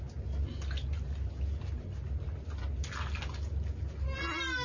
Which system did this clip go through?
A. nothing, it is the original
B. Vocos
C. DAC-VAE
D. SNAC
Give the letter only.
A